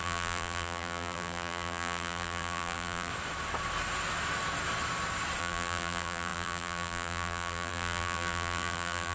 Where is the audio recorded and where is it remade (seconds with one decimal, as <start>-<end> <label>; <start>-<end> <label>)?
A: 0.0-3.1 remade; 3.1-5.4 recorded; 5.4-9.1 remade